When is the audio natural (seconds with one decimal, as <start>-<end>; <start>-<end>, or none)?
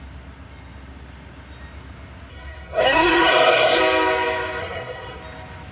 0.0-2.3; 3.8-4.6; 5.2-5.7